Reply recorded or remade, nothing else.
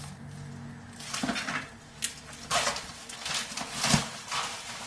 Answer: recorded